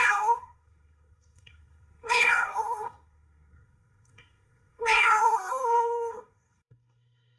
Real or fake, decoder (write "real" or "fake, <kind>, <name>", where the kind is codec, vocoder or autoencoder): fake, codec, SNAC